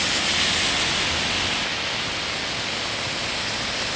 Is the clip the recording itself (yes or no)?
yes